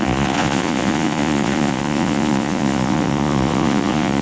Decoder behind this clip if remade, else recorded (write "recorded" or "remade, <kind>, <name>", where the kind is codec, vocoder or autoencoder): remade, vocoder, Vocos